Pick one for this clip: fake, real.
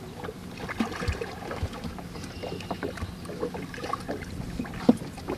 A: real